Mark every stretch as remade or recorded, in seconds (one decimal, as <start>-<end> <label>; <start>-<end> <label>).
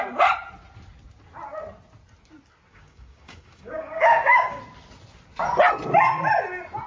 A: 0.0-2.7 recorded; 2.7-4.6 remade; 4.6-6.9 recorded